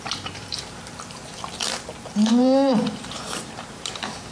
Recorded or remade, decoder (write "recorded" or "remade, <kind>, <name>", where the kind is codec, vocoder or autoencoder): remade, vocoder, BigVGAN v2